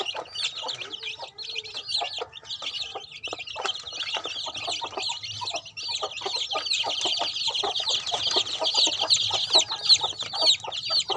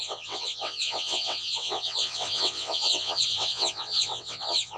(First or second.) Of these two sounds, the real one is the first